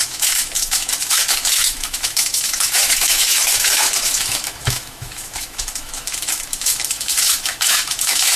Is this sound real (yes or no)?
no